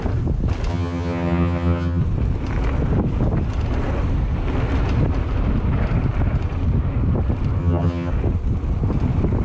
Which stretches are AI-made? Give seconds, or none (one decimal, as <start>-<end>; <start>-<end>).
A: 0.7-2.0; 7.6-8.1